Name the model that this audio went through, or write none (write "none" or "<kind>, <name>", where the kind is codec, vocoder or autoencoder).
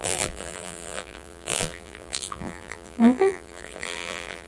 vocoder, BigVGAN v2